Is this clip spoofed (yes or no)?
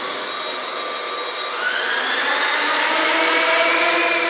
no